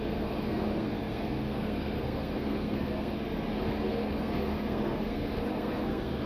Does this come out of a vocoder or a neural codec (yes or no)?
yes